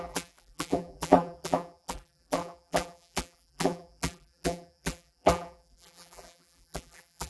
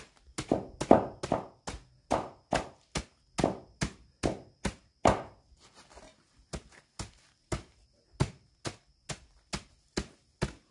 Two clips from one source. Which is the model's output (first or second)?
first